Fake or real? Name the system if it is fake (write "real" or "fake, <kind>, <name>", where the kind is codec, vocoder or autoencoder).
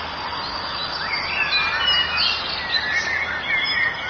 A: real